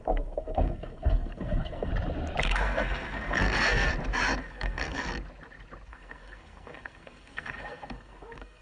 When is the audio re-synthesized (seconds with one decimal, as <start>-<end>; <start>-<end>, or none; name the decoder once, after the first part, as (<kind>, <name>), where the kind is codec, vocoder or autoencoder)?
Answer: 0.0-1.9 (codec, SNAC); 2.4-3.9; 4.4-5.1; 5.9-8.6